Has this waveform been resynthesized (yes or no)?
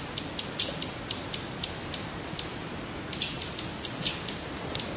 no